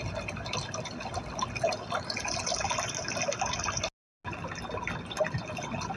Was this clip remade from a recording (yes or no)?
no